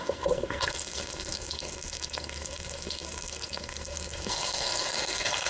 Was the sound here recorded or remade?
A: remade